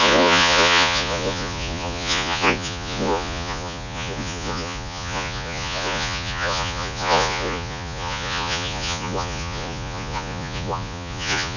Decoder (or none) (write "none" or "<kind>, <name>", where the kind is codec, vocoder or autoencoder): vocoder, Vocos